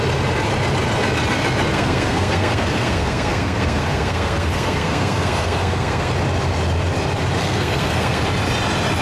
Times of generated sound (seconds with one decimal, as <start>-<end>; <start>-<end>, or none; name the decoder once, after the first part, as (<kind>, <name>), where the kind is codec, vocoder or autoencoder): 1.7-6.1 (codec, SNAC); 7.4-8.2